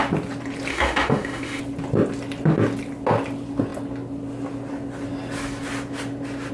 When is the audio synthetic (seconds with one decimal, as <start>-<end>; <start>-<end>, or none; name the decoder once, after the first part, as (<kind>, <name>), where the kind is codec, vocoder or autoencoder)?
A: 0.7-1.6 (autoencoder, DAC-VAE)